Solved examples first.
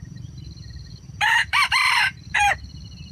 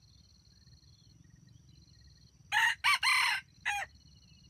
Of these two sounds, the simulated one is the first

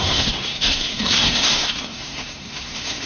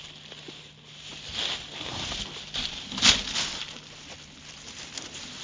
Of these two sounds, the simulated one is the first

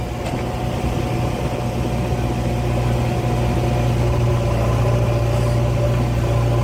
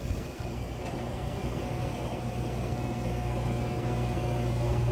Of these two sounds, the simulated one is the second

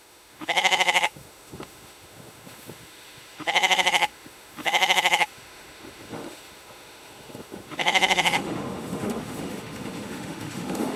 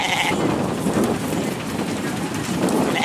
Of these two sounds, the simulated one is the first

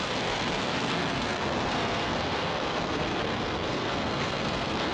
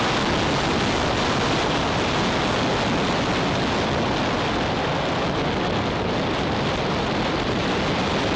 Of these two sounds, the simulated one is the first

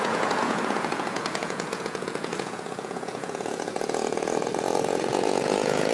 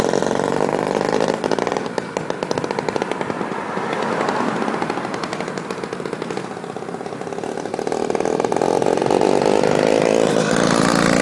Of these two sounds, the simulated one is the first